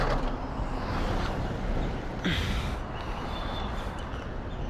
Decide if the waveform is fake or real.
real